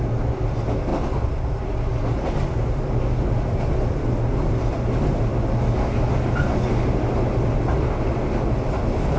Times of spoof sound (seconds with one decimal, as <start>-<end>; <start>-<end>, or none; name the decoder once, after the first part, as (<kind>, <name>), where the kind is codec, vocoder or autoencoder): none